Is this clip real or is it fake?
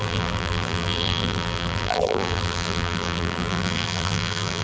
fake